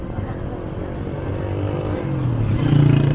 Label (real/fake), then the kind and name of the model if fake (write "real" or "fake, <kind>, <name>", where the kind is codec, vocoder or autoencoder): real